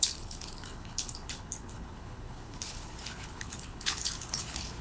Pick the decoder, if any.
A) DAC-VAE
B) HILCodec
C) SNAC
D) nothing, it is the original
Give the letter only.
B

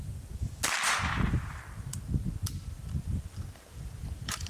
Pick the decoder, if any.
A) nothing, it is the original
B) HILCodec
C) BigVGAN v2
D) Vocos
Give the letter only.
A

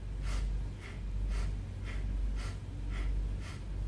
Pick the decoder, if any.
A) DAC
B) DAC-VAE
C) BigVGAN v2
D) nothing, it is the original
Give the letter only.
D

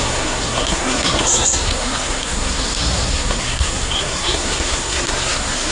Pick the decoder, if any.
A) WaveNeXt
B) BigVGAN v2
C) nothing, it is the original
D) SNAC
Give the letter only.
D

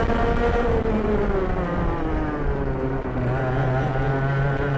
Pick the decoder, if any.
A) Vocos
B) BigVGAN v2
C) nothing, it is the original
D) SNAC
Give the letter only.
C